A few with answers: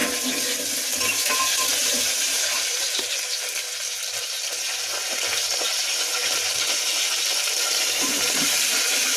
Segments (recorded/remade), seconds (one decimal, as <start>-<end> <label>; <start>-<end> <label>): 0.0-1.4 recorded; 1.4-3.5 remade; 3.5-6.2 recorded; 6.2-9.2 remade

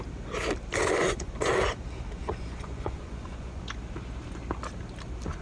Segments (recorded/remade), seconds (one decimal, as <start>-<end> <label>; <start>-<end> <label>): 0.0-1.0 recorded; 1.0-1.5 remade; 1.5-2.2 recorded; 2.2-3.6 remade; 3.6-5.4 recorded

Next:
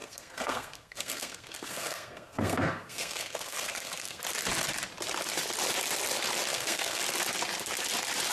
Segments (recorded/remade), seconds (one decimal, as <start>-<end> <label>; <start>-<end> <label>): 0.0-4.2 remade; 4.2-6.5 recorded; 6.5-7.0 remade; 7.0-8.3 recorded

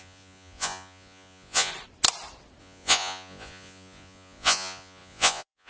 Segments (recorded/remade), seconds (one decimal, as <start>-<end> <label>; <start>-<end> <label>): 0.0-1.7 remade; 1.7-2.6 recorded; 2.6-5.7 remade

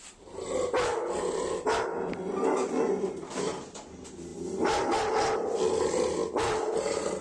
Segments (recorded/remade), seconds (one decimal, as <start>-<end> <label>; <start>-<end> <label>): 0.0-7.2 recorded

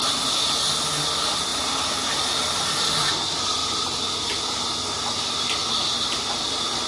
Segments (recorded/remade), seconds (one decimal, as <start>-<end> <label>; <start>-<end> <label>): 0.0-1.5 recorded; 1.5-2.8 remade; 2.8-3.6 recorded; 3.6-4.6 remade; 4.6-5.6 recorded; 5.6-6.2 remade; 6.2-6.9 recorded

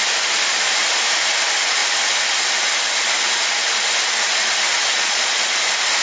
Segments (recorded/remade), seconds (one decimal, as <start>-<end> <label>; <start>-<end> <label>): 0.0-4.8 recorded; 4.8-5.4 remade; 5.4-6.0 recorded